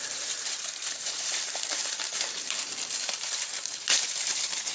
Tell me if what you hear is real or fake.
fake